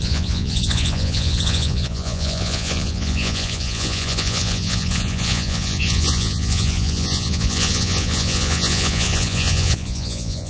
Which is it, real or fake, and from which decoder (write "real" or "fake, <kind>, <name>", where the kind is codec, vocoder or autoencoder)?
fake, vocoder, Vocos